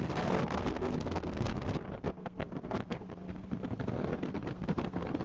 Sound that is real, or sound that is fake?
fake